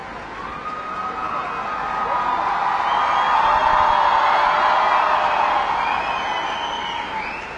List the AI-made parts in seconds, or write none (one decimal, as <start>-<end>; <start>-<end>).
none